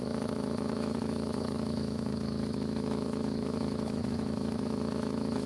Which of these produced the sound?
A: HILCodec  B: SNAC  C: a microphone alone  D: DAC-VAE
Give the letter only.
D